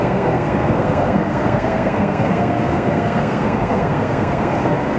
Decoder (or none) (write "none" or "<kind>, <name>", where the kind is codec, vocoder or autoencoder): codec, SNAC